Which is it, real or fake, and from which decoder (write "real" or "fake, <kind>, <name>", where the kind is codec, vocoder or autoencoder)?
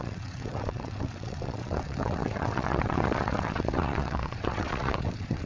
fake, vocoder, WaveNeXt